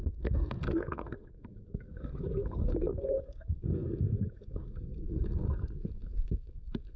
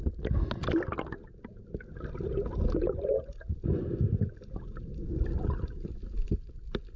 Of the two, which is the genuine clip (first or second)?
second